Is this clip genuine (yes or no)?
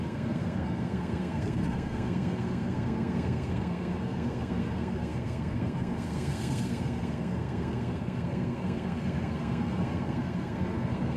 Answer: no